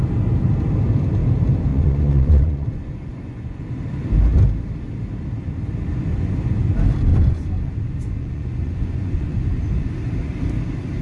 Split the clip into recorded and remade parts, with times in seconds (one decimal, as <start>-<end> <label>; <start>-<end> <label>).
0.0-1.7 recorded; 1.7-3.6 remade; 3.6-7.1 recorded; 7.1-9.9 remade; 9.9-11.0 recorded